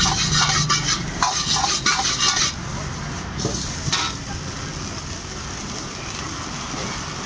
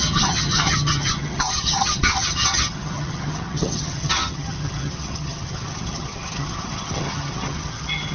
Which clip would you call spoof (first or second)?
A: second